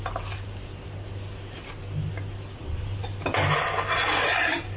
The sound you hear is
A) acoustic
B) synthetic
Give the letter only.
A